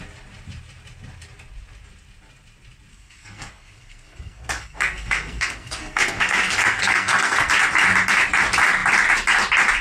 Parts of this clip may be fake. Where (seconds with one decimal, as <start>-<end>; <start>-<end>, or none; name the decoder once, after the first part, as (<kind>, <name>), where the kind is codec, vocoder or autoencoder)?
2.9-7.5 (codec, SNAC)